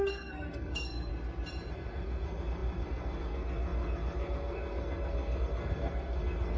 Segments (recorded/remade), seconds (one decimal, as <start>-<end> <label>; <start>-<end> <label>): 0.0-1.1 remade; 1.1-1.7 recorded; 1.7-6.6 remade